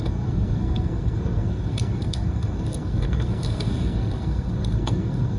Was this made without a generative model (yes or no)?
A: no